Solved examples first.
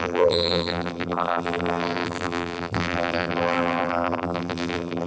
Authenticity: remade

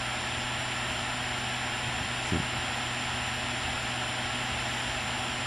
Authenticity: recorded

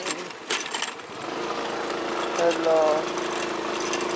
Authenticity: recorded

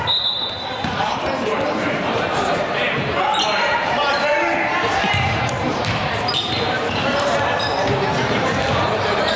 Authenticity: remade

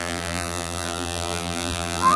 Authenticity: remade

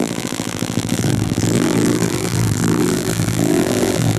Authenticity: remade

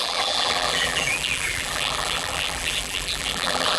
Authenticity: remade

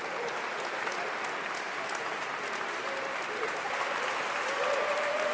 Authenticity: recorded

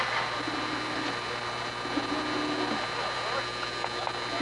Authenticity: recorded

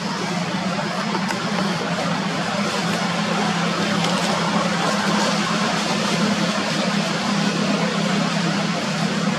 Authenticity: remade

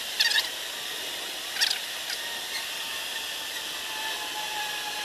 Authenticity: remade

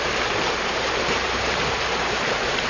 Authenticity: remade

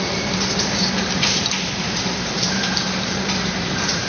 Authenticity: remade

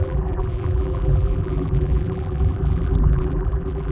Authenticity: remade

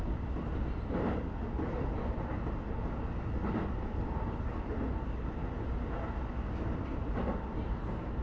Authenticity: recorded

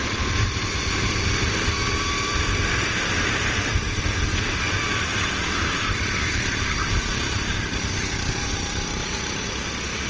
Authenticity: remade